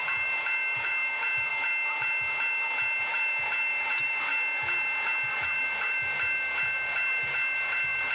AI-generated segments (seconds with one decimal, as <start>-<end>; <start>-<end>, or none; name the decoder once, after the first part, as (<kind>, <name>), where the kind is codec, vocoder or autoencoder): 0.0-1.5 (vocoder, BigVGAN v2); 3.0-4.3; 5.3-8.1